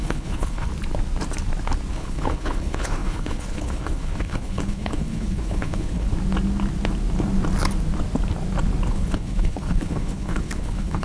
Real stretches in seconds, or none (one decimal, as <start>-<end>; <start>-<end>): 0.7-1.9; 6.1-8.9